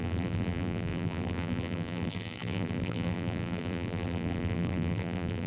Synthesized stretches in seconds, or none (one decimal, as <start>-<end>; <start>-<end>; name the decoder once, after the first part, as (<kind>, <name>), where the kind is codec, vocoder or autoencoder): 0.0-5.5 (vocoder, BigVGAN v2)